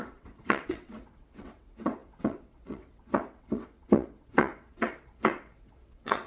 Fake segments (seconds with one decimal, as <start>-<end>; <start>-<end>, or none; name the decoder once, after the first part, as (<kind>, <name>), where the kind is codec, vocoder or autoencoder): 0.0-6.3 (vocoder, WaveNeXt)